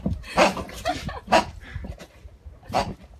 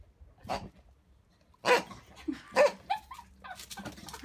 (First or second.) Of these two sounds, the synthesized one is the first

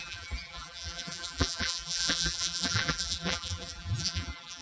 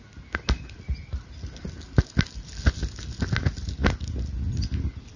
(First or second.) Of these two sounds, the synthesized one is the first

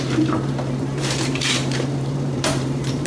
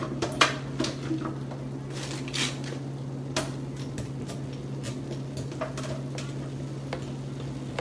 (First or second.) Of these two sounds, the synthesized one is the first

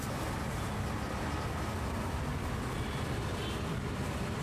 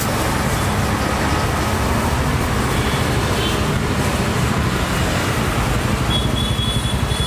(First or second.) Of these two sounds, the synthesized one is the first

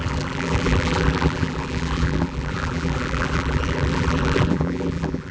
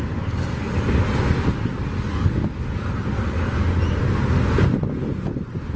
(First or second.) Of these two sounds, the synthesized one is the first